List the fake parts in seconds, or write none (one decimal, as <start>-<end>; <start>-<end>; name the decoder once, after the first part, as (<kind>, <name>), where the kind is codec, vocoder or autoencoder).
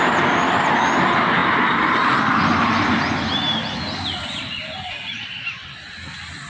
none